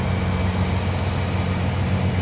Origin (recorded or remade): recorded